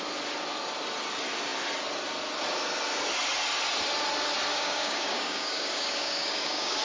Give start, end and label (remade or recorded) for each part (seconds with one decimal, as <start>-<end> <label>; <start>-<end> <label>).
0.0-4.5 recorded; 4.5-6.8 remade